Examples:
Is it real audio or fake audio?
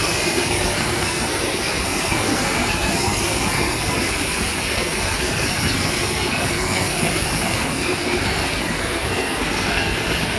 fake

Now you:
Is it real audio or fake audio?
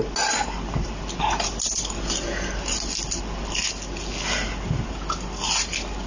real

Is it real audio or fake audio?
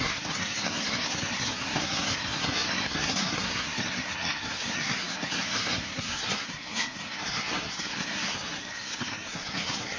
fake